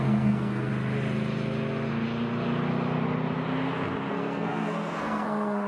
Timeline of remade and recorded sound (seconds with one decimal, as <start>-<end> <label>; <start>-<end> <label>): 0.0-0.7 remade; 0.7-4.1 recorded; 4.1-5.7 remade